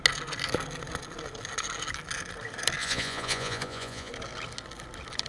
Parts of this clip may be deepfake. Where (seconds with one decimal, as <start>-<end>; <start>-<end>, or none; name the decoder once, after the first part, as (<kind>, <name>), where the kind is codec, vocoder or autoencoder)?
2.8-4.1 (vocoder, Vocos)